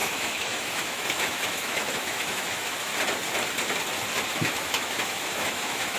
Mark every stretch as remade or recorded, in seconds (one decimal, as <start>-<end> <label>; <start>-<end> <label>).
0.0-2.9 remade; 2.9-4.3 recorded; 4.3-6.0 remade